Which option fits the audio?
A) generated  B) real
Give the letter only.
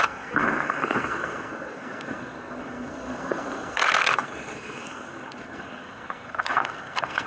A